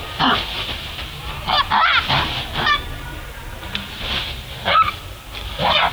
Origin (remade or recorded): recorded